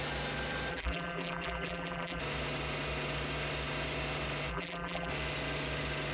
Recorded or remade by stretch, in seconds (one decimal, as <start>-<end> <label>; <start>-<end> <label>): 0.0-0.7 recorded; 0.7-2.2 remade; 2.2-4.5 recorded; 4.5-5.1 remade; 5.1-6.1 recorded